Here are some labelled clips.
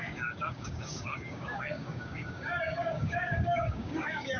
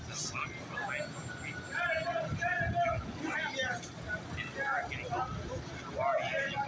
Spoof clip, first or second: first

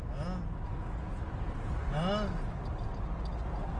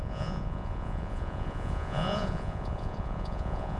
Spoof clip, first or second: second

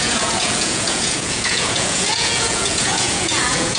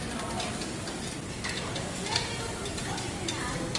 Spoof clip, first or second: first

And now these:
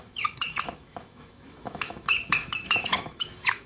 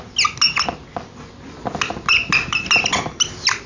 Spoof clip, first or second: first